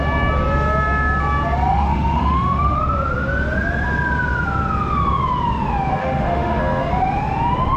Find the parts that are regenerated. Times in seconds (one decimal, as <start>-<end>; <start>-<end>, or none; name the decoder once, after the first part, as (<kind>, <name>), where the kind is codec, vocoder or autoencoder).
1.7-2.8 (autoencoder, DAC-VAE); 6.0-6.6